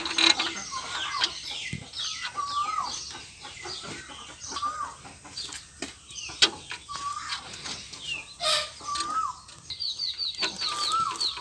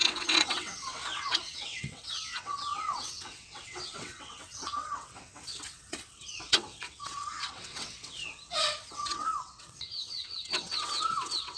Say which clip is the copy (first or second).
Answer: second